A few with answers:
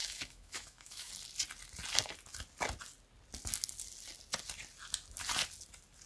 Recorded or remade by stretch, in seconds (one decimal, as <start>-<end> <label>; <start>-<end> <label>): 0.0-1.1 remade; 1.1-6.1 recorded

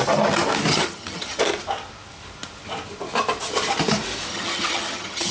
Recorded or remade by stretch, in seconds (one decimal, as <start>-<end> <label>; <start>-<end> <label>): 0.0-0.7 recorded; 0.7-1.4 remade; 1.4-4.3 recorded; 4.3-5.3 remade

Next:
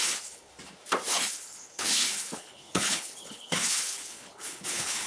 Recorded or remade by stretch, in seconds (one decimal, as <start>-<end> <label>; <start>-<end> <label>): 0.0-0.5 remade; 0.5-1.1 recorded; 1.1-5.1 remade

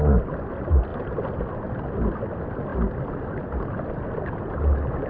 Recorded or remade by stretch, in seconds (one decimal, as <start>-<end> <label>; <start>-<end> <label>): 0.0-5.1 recorded

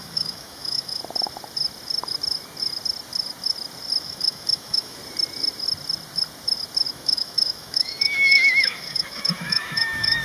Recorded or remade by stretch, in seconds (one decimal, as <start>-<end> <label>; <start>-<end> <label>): 0.0-1.0 remade; 1.0-4.0 recorded; 4.0-5.0 remade; 5.0-6.9 recorded; 6.9-10.2 remade

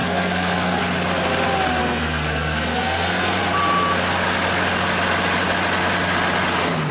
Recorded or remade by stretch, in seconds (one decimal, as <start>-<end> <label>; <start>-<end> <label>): 0.0-0.8 remade; 0.8-1.8 recorded; 1.8-3.4 remade; 3.4-6.9 recorded

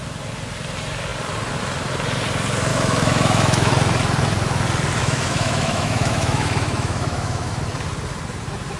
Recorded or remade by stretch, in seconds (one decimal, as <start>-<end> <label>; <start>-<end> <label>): 0.0-2.7 recorded; 2.7-3.7 remade; 3.7-5.0 recorded; 5.0-7.6 remade; 7.6-8.8 recorded